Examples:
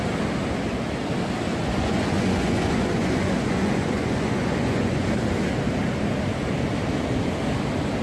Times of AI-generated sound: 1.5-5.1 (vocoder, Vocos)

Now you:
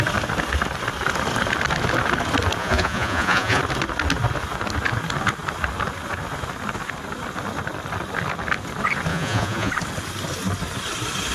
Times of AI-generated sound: 2.6-3.6 (vocoder, Vocos); 9.1-9.7

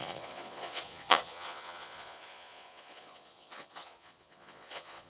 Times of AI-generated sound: 0.0-5.1 (vocoder, Vocos)

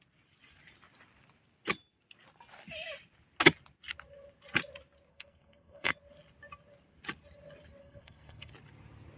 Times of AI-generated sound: 5.1-5.9 (codec, SNAC); 7.8-8.5

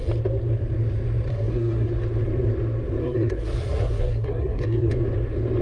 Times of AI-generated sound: 1.3-1.9 (codec, SNAC); 3.0-4.9

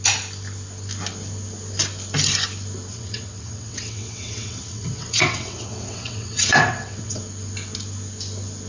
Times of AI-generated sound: 2.9-7.2 (vocoder, WaveNeXt)

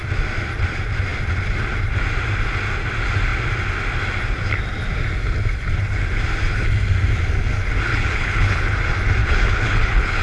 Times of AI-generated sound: 7.9-8.7 (codec, HILCodec); 9.2-10.2

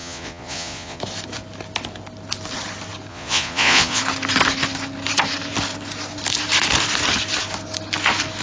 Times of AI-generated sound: 0.0-1.0 (vocoder, Vocos); 3.1-4.0